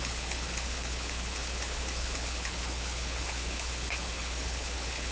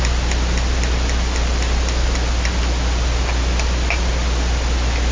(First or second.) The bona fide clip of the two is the second